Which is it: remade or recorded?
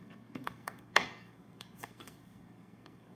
remade